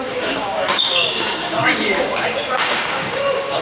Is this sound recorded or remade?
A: remade